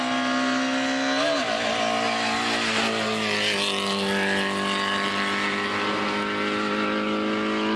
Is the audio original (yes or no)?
yes